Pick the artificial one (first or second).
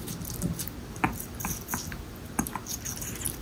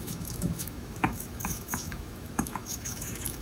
second